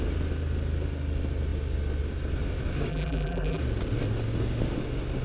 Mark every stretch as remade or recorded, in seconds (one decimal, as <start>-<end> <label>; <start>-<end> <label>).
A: 0.0-2.9 recorded; 2.9-3.6 remade; 3.6-5.2 recorded